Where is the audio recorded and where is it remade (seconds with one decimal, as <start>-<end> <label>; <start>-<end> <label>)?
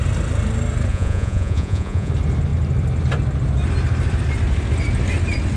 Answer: 0.0-0.9 recorded; 0.9-2.1 remade; 2.1-5.6 recorded